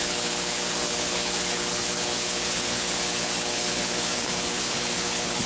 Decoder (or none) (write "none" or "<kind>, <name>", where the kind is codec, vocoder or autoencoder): codec, HILCodec